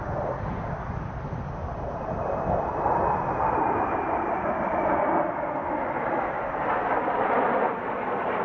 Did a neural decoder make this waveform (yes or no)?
no